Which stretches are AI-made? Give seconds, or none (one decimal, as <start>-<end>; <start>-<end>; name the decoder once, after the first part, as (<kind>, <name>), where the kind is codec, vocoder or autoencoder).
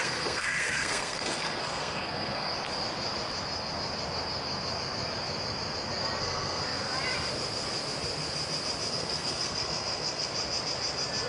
0.0-2.5 (codec, SNAC); 6.2-6.9; 8.9-10.3